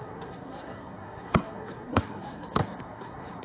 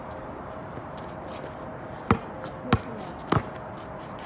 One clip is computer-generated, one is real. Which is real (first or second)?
second